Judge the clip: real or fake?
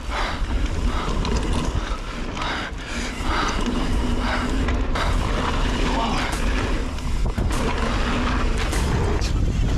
real